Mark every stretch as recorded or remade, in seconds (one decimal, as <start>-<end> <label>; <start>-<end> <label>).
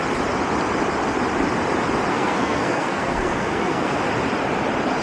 0.0-2.1 recorded; 2.1-4.0 remade; 4.0-5.0 recorded